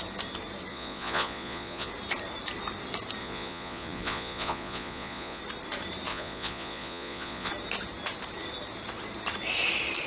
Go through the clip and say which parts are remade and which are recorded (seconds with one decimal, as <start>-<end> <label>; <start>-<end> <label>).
0.0-0.7 recorded; 0.7-1.9 remade; 1.9-3.2 recorded; 3.2-5.4 remade; 5.4-6.1 recorded; 6.1-7.5 remade; 7.5-10.1 recorded